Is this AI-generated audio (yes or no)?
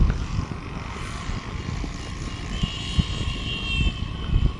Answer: no